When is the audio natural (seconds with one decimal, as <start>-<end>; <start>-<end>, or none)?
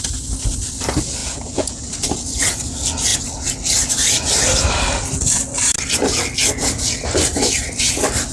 0.0-1.2; 1.8-8.3